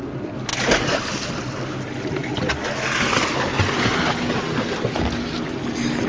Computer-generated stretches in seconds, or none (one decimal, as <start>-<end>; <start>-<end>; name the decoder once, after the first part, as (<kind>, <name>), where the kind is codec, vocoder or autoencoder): none